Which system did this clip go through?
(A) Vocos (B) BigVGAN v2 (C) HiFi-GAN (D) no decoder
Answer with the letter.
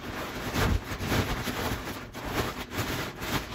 D